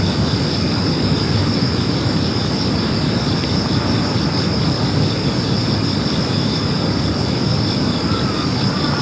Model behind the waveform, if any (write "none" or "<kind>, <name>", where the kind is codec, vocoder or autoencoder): codec, DAC